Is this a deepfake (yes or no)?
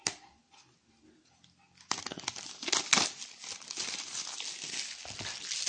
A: no